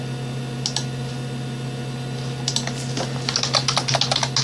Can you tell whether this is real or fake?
real